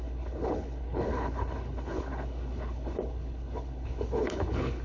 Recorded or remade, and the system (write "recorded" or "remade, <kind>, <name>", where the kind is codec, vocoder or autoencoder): remade, codec, HILCodec